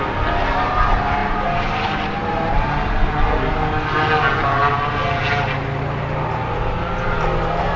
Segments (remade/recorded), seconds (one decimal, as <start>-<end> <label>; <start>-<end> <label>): 0.0-7.8 recorded